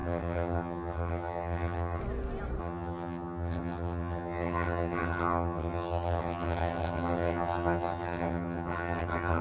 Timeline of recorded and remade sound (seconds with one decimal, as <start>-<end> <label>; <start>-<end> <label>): 0.0-2.0 remade; 2.0-2.6 recorded; 2.6-9.4 remade